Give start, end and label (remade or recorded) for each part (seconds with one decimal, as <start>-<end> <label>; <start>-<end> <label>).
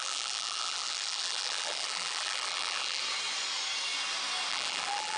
0.0-3.0 remade; 3.0-4.5 recorded; 4.5-5.2 remade